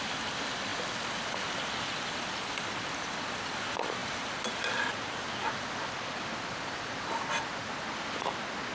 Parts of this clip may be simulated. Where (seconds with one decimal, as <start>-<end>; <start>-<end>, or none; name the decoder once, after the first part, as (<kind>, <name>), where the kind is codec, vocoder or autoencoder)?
none